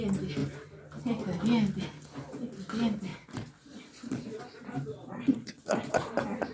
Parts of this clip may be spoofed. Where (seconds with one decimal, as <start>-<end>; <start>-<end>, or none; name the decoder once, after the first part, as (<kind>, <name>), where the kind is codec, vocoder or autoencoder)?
3.1-4.4 (vocoder, Vocos); 4.9-6.1